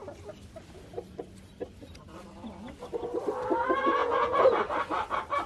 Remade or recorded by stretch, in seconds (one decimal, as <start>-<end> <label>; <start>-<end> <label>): 0.0-4.0 recorded; 4.0-4.5 remade; 4.5-5.5 recorded